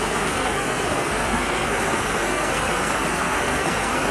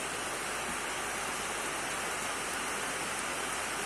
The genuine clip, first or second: second